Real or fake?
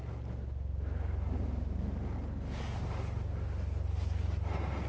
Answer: real